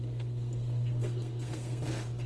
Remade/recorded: remade